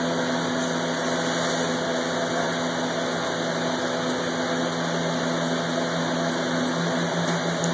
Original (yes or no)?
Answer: yes